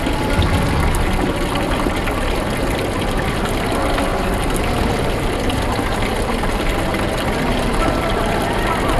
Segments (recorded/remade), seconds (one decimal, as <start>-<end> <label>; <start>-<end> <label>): 0.0-4.1 recorded; 4.1-6.4 remade; 6.4-6.9 recorded; 6.9-8.4 remade; 8.4-9.0 recorded